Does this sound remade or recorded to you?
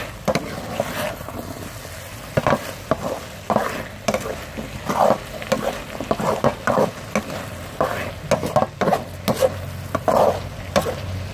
recorded